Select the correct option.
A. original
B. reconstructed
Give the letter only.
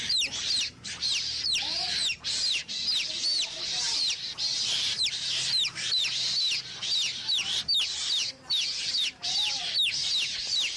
B